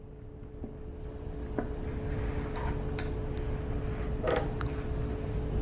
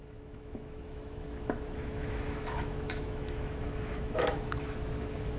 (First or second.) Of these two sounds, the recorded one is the first